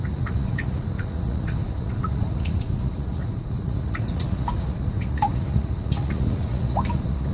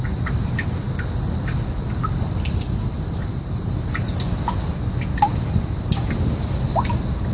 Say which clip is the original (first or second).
second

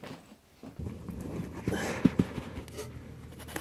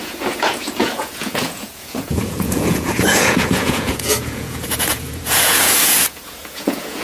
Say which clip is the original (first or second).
first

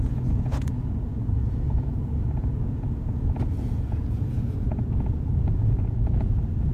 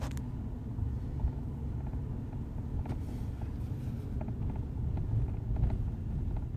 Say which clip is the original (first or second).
second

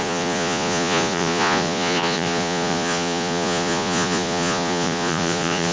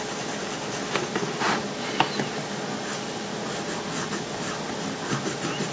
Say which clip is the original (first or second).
second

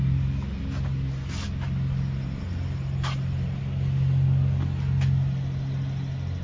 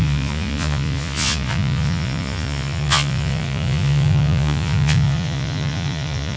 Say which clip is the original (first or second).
first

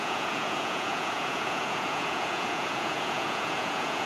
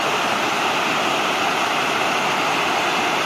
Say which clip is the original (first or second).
second